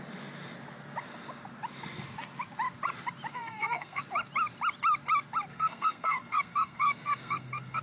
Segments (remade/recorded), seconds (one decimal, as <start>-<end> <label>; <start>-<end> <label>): 0.0-3.3 recorded; 3.3-4.0 remade; 4.0-5.5 recorded; 5.5-7.8 remade